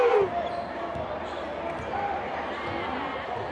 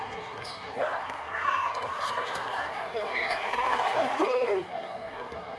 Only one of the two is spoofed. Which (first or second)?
second